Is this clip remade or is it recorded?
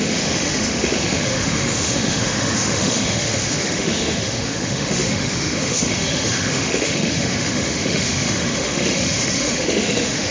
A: remade